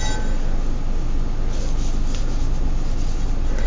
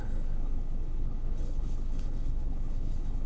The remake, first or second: second